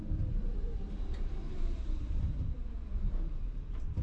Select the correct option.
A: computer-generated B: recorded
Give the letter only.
A